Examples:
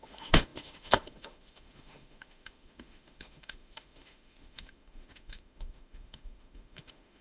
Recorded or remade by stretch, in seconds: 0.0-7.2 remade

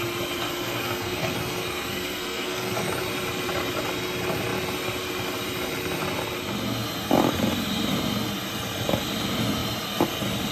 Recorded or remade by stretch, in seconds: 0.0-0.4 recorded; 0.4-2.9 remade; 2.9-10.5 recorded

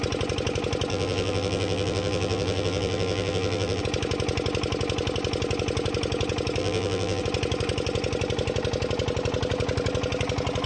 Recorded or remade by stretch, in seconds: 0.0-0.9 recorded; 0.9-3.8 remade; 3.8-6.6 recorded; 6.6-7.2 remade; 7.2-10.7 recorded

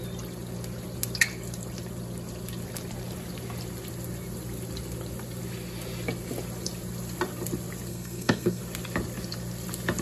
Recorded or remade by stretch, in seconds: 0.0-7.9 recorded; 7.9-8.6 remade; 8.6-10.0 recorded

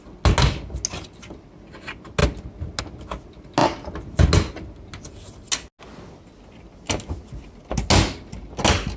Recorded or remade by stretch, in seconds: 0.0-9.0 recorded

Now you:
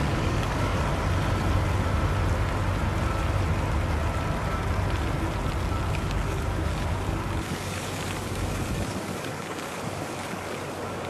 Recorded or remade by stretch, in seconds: 0.0-0.9 remade; 0.9-5.9 recorded; 5.9-11.1 remade

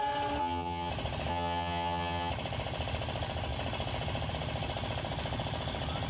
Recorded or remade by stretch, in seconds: 0.0-0.4 recorded; 0.4-0.9 remade; 0.9-1.3 recorded; 1.3-2.3 remade; 2.3-6.1 recorded

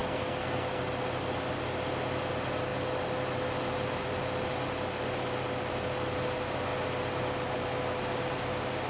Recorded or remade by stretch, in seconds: 0.0-0.8 remade; 0.8-8.9 recorded